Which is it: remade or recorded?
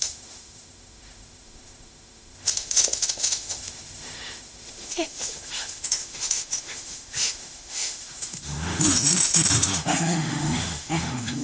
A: remade